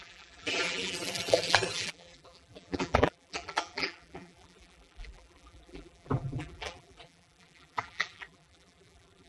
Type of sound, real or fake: fake